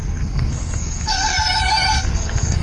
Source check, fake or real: fake